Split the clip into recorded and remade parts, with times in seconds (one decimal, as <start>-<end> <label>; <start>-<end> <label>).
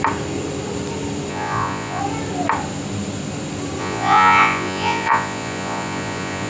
0.0-1.3 recorded; 1.3-2.0 remade; 2.0-3.8 recorded; 3.8-6.5 remade